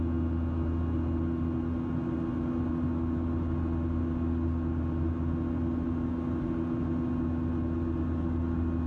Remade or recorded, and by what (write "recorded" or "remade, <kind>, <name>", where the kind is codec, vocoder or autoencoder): recorded